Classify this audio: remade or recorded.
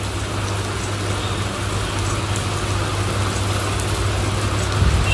recorded